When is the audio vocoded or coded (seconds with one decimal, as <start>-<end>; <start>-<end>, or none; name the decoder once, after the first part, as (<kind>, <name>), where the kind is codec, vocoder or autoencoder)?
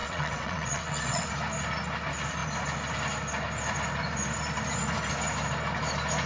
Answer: 0.0-1.3 (vocoder, WaveNeXt)